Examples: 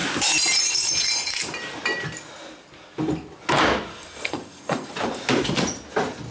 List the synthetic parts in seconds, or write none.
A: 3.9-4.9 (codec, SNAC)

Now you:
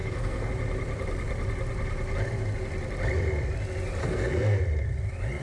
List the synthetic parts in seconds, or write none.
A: 0.0-0.5 (codec, SNAC); 4.0-4.6

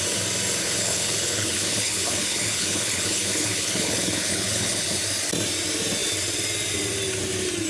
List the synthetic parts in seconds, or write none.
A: 0.6-5.0 (codec, HILCodec)

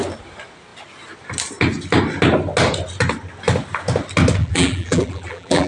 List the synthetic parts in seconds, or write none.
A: 4.4-5.7 (vocoder, BigVGAN v2)

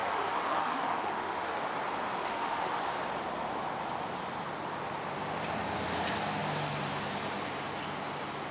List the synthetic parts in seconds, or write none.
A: 0.0-1.6 (autoencoder, DAC-VAE); 2.2-2.8

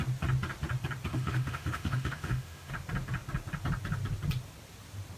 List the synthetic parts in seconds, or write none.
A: 1.1-2.7 (autoencoder, DAC-VAE)

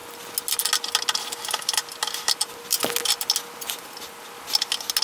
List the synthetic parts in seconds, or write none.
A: none